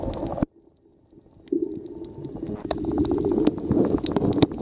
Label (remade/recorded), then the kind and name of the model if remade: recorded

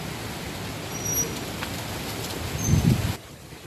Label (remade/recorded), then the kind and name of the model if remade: recorded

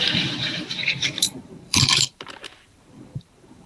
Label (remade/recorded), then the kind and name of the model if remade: remade, vocoder, BigVGAN v2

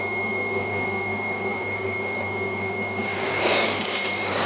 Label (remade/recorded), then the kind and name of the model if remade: remade, codec, DAC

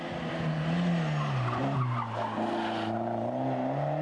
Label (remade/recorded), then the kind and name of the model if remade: recorded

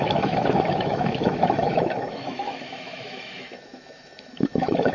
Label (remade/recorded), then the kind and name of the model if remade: remade, autoencoder, DAC-VAE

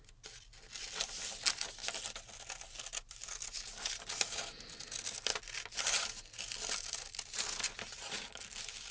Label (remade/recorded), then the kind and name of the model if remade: recorded